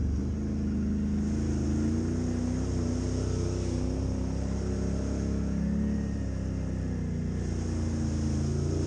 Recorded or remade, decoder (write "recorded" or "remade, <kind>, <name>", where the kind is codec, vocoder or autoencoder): recorded